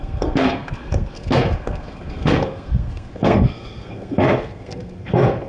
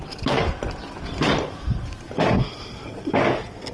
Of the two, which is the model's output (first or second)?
first